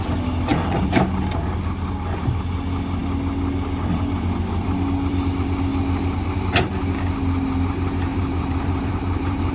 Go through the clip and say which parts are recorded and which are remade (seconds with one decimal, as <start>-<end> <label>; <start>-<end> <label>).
0.0-0.5 recorded; 0.5-1.1 remade; 1.1-8.1 recorded; 8.1-9.5 remade